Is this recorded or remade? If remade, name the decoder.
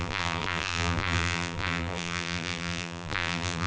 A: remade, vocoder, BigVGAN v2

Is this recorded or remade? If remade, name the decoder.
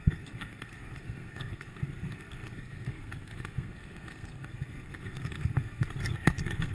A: remade, codec, SNAC